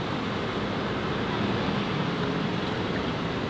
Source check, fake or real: real